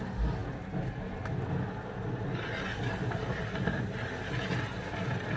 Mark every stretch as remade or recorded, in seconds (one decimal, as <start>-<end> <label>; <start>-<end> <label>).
0.0-5.4 recorded